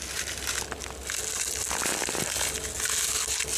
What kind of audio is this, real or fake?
real